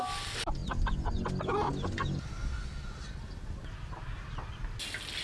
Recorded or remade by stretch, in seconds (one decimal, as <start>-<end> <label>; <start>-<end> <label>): 0.0-5.2 recorded